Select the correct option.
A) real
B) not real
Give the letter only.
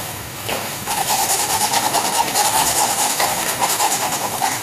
B